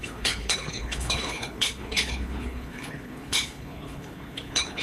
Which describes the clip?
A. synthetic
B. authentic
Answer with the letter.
A